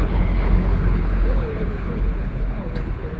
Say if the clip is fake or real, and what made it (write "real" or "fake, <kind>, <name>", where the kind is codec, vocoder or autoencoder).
fake, codec, HILCodec